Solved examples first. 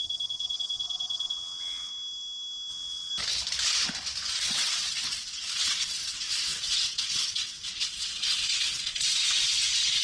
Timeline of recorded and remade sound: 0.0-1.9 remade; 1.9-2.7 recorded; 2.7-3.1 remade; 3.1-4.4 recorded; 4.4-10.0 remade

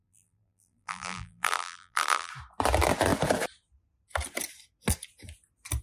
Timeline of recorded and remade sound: 0.0-2.3 remade; 2.3-5.8 recorded

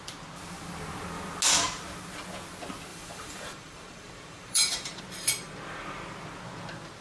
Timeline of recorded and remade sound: 0.0-2.9 recorded; 2.9-5.0 remade; 5.0-7.0 recorded

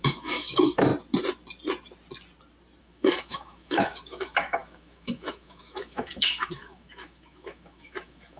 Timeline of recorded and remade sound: 0.0-0.9 remade; 0.9-2.8 recorded; 2.8-8.4 remade

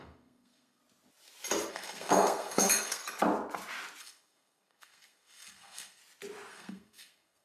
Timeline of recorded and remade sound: 0.0-0.8 remade; 0.8-1.7 recorded; 1.7-3.0 remade; 3.0-4.0 recorded; 4.0-6.0 remade; 6.0-6.5 recorded; 6.5-7.4 remade